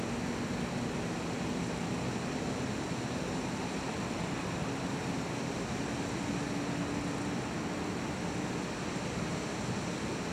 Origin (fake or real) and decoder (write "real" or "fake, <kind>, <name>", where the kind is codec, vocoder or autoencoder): real